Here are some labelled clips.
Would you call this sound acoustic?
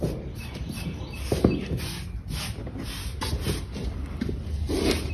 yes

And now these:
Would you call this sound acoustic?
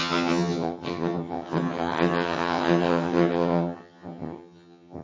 no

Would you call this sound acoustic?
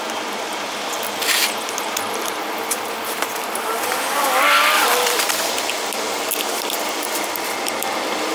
no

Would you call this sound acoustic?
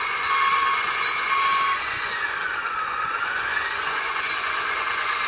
no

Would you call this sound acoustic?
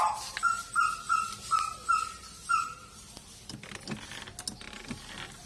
yes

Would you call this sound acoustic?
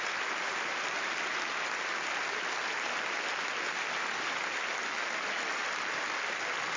yes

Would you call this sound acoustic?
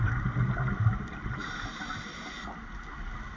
yes